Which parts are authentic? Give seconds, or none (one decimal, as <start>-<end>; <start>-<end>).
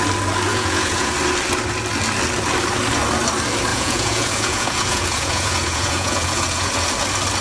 0.0-0.5; 1.1-3.7; 6.7-7.4